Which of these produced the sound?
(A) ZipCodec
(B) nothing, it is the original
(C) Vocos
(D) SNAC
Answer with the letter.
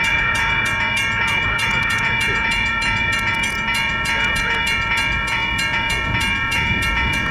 C